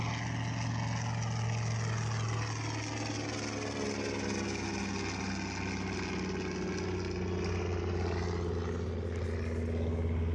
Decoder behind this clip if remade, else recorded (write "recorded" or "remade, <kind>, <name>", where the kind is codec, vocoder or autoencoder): recorded